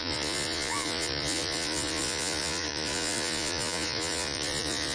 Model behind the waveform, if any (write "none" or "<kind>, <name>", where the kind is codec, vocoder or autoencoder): vocoder, Vocos